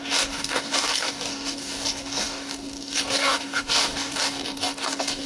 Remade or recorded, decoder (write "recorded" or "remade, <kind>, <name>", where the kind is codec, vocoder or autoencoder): remade, codec, DAC